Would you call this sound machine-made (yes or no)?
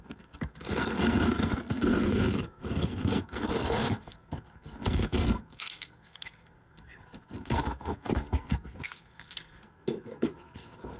yes